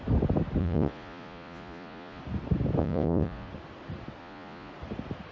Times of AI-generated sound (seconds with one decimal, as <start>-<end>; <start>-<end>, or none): 0.6-2.2; 2.8-3.5; 4.2-4.7